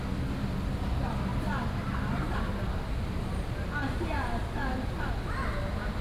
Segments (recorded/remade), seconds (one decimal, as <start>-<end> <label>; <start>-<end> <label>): 0.0-6.0 recorded

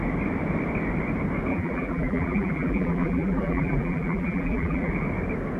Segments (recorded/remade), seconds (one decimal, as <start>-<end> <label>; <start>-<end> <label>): 0.0-1.5 recorded; 1.5-4.9 remade; 4.9-5.6 recorded

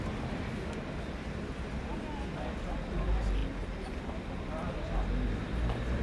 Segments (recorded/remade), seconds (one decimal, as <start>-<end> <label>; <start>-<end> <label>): 0.0-6.0 recorded